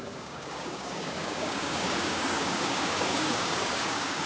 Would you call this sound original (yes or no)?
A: no